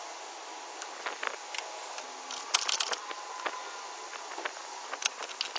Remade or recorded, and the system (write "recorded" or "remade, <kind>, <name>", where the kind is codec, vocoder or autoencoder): recorded